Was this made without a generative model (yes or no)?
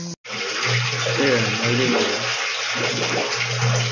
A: yes